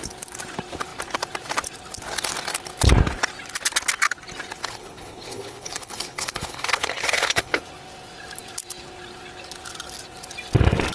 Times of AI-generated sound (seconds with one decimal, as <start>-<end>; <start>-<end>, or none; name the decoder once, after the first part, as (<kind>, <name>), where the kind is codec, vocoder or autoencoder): 4.6-7.6 (codec, HILCodec)